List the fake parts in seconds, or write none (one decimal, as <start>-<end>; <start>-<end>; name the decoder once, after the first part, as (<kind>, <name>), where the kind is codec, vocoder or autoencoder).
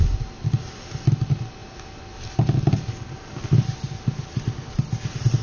none